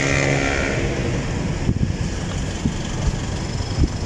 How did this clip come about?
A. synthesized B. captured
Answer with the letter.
B